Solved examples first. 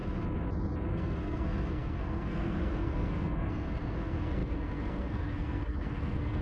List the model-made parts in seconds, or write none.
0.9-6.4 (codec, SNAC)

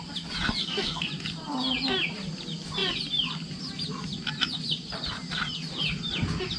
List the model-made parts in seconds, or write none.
0.6-1.1 (codec, SNAC)

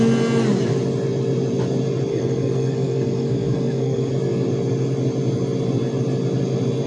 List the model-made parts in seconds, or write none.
2.1-4.1 (codec, SNAC)

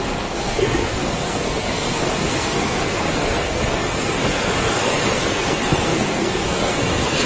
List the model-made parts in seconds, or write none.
0.0-7.3 (codec, SNAC)

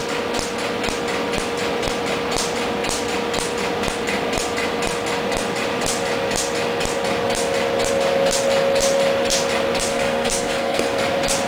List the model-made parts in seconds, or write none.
9.9-11.0 (codec, SNAC)

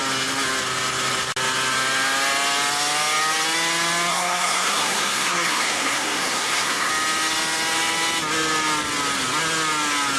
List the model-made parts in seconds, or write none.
4.1-6.9 (codec, SNAC)

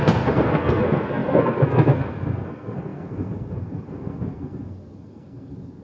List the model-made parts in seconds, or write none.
0.0-5.8 (codec, SNAC)

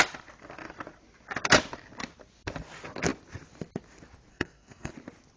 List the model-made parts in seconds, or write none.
4.3-4.9 (codec, SNAC)